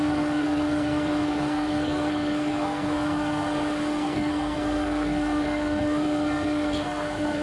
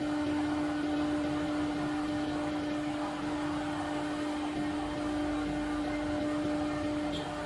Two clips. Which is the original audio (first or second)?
second